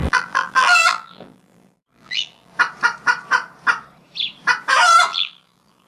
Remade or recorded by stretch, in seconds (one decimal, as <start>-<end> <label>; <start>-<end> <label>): 0.0-2.5 remade; 2.5-5.1 recorded; 5.1-5.9 remade